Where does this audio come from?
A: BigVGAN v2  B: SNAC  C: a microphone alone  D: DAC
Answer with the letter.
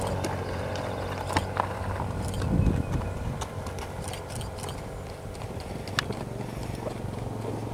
C